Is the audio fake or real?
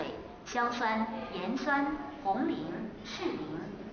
real